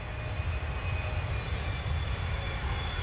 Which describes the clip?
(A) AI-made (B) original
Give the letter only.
B